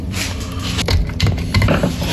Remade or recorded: remade